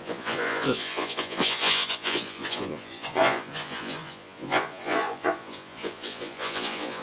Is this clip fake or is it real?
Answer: fake